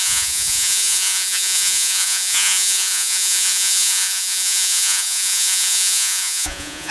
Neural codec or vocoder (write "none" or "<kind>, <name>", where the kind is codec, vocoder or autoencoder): vocoder, Vocos